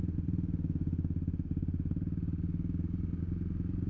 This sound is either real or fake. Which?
real